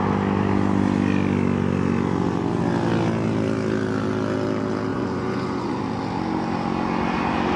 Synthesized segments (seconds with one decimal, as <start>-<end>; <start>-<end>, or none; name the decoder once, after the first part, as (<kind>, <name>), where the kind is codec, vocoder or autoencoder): 4.9-5.8 (vocoder, Vocos)